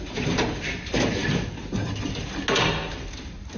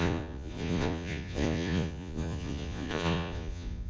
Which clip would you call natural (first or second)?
first